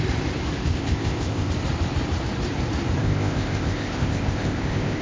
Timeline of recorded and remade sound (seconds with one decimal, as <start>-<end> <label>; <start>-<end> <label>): 0.0-0.7 recorded; 0.7-1.5 remade; 1.5-3.0 recorded; 3.0-5.0 remade